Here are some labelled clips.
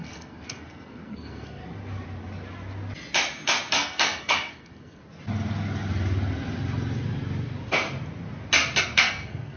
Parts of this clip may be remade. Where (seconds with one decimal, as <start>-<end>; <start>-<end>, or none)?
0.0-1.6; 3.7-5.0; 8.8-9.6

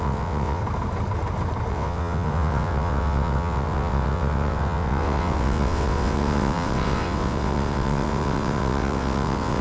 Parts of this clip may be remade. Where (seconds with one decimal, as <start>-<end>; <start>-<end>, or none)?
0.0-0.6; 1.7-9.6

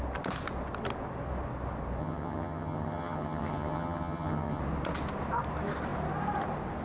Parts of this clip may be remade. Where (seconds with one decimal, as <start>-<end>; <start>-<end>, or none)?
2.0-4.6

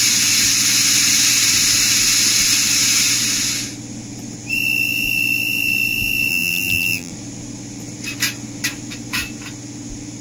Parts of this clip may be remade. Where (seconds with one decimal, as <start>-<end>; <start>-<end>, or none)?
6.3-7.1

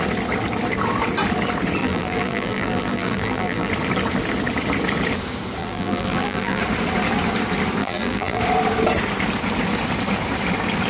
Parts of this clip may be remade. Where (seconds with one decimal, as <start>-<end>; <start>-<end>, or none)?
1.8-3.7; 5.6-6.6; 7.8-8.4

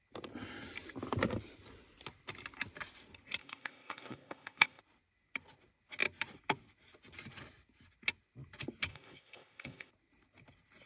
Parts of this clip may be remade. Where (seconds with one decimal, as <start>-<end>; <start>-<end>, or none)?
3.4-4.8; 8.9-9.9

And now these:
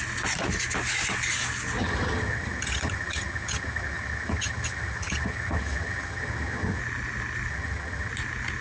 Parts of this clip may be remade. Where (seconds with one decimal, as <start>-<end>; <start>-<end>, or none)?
1.8-6.8; 7.5-8.1